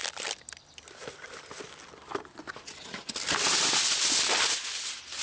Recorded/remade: recorded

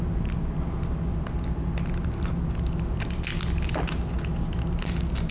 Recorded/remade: recorded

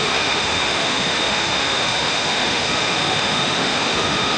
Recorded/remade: remade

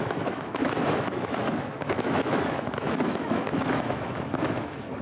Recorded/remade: remade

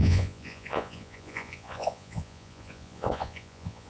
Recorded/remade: remade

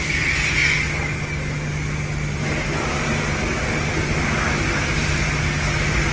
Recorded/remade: recorded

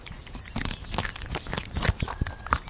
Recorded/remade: recorded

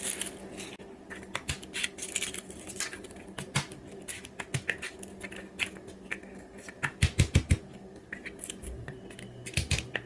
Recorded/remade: recorded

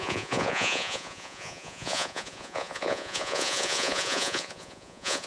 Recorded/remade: remade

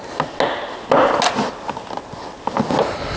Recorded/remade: recorded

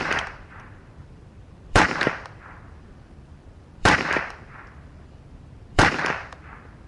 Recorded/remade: remade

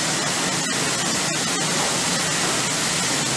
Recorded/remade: recorded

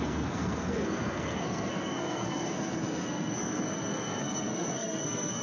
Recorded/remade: remade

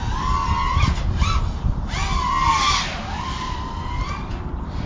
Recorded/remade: recorded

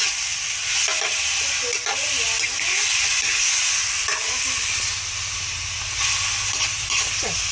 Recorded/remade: recorded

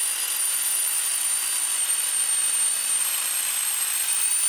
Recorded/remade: recorded